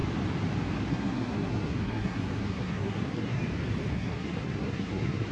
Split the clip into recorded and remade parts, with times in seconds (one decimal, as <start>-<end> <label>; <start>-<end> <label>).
0.0-0.9 recorded; 0.9-3.4 remade; 3.4-3.9 recorded; 3.9-5.3 remade